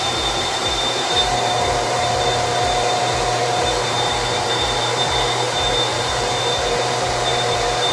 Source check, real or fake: fake